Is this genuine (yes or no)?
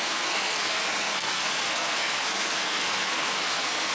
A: no